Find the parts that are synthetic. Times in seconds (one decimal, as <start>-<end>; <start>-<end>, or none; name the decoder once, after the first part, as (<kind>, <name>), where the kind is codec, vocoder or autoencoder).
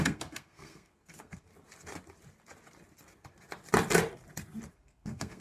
0.0-1.5 (codec, SNAC); 4.7-5.4